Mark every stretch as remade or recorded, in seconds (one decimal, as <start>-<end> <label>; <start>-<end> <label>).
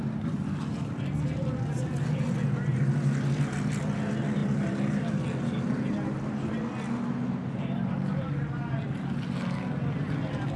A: 0.0-10.6 recorded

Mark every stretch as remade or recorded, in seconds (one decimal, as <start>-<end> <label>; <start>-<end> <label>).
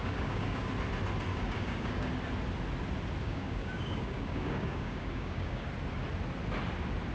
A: 0.0-0.7 remade; 0.7-1.3 recorded; 1.3-2.1 remade; 2.1-3.2 recorded; 3.2-5.7 remade; 5.7-7.1 recorded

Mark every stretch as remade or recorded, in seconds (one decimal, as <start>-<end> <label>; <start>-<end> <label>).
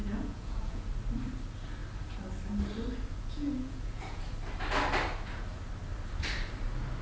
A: 0.0-0.9 remade; 0.9-3.1 recorded; 3.1-4.2 remade; 4.2-7.0 recorded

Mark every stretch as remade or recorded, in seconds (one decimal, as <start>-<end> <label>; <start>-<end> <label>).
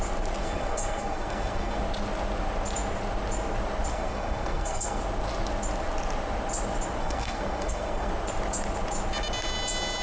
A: 0.0-0.4 recorded; 0.4-1.8 remade; 1.8-3.9 recorded; 3.9-5.0 remade; 5.0-7.0 recorded; 7.0-8.1 remade; 8.1-10.0 recorded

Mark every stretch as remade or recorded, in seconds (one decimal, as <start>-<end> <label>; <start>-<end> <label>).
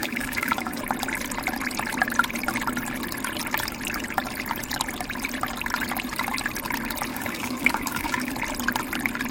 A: 0.0-0.8 remade; 0.8-7.1 recorded; 7.1-8.3 remade; 8.3-9.3 recorded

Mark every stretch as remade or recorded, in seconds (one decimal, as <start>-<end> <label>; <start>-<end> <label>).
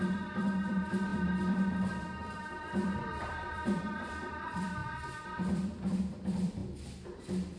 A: 0.0-6.6 remade; 6.6-7.6 recorded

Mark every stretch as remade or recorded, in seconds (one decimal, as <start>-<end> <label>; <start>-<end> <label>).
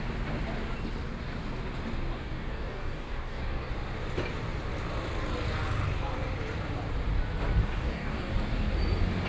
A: 0.0-2.1 recorded; 2.1-3.7 remade; 3.7-7.6 recorded; 7.6-8.3 remade; 8.3-9.3 recorded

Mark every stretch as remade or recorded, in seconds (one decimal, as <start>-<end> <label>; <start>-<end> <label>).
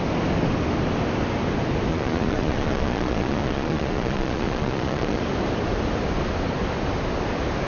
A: 0.0-1.9 recorded; 1.9-5.2 remade; 5.2-7.7 recorded